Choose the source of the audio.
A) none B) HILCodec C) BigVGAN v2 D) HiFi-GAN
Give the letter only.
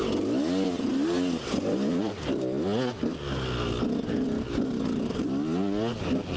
A